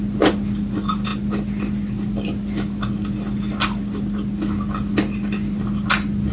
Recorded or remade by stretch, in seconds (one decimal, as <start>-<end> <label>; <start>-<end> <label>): 0.0-6.3 recorded